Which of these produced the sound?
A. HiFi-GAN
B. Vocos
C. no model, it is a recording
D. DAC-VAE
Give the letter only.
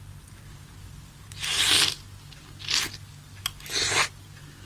C